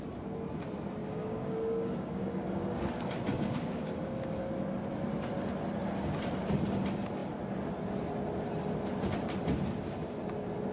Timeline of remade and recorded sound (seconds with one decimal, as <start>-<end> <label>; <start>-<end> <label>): 0.0-1.0 recorded; 1.0-2.8 remade; 2.8-3.3 recorded; 3.3-4.4 remade; 4.4-10.7 recorded